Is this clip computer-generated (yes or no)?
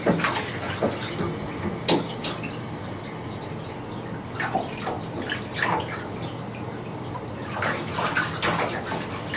no